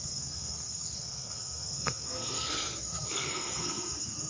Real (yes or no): no